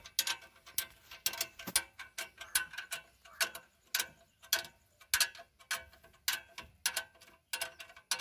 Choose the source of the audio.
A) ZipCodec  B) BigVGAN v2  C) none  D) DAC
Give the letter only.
C